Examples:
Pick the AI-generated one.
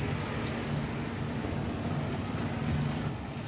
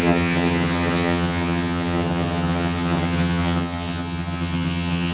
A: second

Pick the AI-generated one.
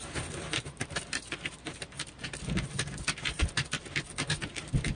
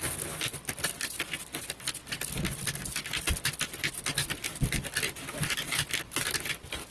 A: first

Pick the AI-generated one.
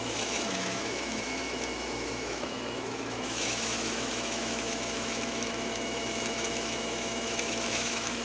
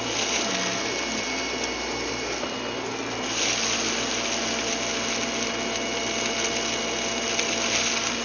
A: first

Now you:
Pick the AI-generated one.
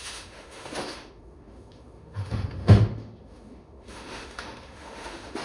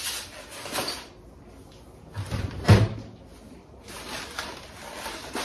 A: first